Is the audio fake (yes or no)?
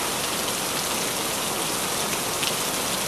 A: no